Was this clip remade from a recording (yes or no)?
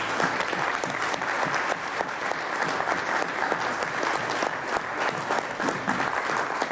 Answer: no